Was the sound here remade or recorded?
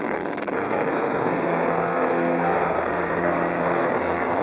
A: remade